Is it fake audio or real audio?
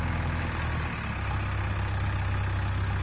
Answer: real